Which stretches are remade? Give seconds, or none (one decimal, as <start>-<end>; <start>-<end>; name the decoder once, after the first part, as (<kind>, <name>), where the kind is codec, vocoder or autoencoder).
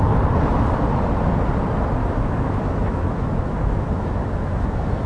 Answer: 2.0-5.1 (autoencoder, DAC-VAE)